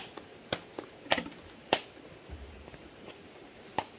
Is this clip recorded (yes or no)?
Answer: yes